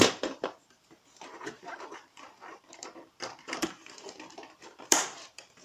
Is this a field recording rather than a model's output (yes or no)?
no